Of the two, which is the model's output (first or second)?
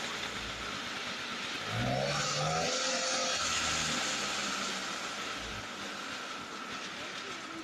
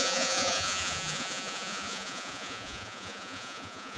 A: second